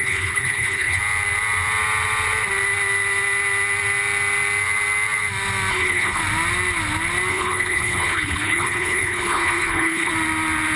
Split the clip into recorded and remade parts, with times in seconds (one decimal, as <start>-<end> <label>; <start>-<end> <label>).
0.0-1.0 remade; 1.0-5.7 recorded; 5.7-6.2 remade; 6.2-7.3 recorded; 7.3-10.1 remade; 10.1-10.8 recorded